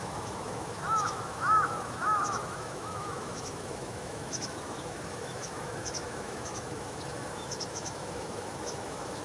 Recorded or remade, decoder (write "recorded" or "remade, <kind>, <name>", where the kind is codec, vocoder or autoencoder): remade, autoencoder, DAC-VAE